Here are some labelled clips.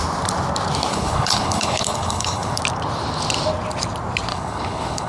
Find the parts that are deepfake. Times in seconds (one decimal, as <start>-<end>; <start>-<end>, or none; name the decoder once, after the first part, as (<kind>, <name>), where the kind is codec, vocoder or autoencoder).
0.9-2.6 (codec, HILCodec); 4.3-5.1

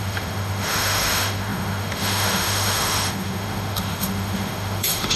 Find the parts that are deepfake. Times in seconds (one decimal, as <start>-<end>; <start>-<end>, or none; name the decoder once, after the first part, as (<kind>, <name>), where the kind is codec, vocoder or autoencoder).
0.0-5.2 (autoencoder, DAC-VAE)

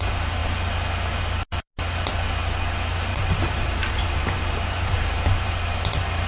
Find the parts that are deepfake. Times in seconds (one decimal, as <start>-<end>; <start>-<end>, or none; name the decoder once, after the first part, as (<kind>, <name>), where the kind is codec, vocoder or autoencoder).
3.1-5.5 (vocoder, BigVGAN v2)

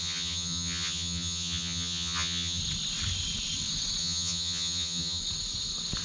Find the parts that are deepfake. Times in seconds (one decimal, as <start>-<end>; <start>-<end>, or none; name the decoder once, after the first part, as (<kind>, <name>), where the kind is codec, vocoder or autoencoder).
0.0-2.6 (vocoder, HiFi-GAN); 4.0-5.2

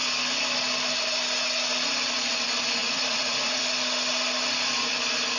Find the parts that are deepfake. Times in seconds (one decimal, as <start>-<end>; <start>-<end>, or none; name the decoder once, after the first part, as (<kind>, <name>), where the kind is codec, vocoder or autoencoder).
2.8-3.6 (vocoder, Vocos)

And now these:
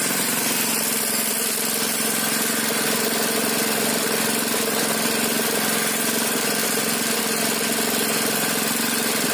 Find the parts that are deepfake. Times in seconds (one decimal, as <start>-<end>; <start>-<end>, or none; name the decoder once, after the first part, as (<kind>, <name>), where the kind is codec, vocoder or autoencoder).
none

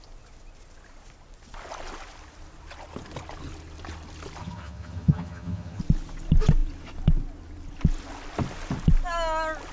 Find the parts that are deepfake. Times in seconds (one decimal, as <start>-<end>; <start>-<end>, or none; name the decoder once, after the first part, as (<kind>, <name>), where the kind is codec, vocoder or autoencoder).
4.4-5.8 (vocoder, HiFi-GAN)